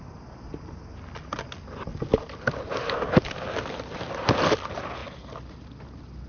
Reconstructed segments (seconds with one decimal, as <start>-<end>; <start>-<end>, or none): none